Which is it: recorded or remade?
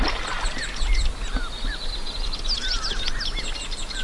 recorded